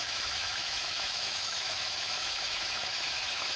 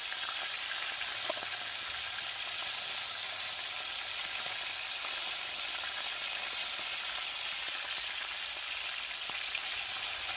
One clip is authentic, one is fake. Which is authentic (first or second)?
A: second